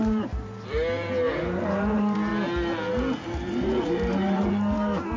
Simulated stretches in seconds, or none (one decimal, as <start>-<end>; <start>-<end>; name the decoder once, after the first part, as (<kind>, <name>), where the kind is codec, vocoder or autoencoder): 0.0-2.3 (vocoder, BigVGAN v2); 3.2-5.2